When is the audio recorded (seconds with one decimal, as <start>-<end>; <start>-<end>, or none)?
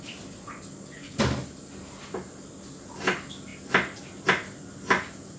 0.0-5.4